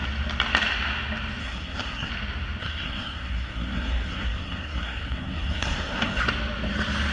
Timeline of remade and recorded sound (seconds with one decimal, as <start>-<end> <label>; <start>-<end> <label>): 0.0-1.4 recorded; 1.4-2.1 remade; 2.1-2.6 recorded; 2.6-6.2 remade; 6.2-7.1 recorded